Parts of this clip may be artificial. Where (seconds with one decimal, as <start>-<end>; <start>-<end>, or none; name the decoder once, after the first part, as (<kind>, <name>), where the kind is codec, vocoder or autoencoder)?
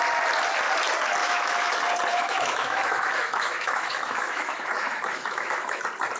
1.2-1.7 (autoencoder, DAC-VAE); 2.1-5.8